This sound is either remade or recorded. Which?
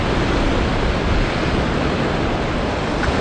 recorded